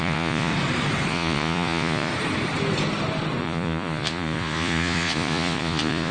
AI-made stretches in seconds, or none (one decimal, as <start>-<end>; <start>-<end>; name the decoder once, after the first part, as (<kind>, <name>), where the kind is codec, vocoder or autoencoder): 0.0-0.5 (vocoder, Vocos); 1.1-2.1; 3.4-6.1